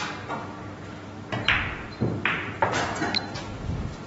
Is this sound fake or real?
real